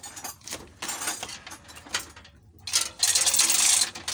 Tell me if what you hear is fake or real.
real